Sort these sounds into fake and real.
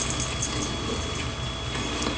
real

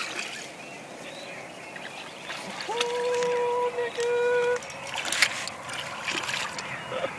real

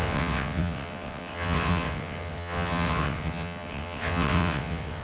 fake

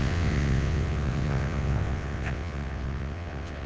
fake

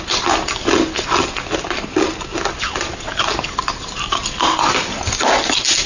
real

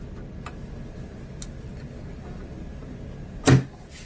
real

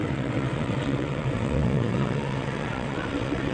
fake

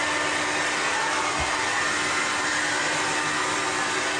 real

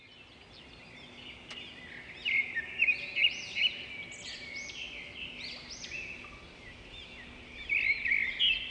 real